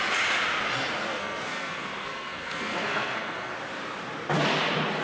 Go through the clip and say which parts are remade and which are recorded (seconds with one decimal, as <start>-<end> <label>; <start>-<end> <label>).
0.0-1.1 recorded; 1.1-3.5 remade; 3.5-5.0 recorded